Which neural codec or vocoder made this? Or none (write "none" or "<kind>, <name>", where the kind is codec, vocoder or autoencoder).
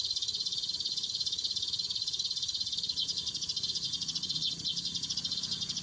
vocoder, Vocos